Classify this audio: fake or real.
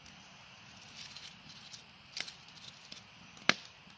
real